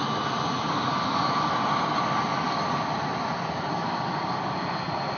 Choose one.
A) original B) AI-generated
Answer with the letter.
A